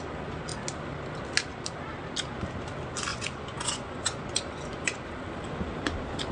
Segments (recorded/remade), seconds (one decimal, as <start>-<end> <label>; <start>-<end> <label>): 0.0-3.1 recorded; 3.1-5.2 remade; 5.2-6.3 recorded